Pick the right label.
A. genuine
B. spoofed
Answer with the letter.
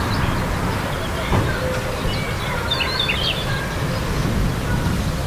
A